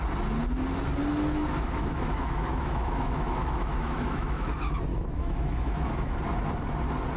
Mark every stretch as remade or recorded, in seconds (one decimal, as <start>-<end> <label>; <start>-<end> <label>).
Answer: 0.0-1.4 recorded; 1.4-4.5 remade; 4.5-4.9 recorded; 4.9-6.2 remade; 6.2-7.2 recorded